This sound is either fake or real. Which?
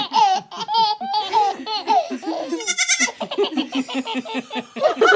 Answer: real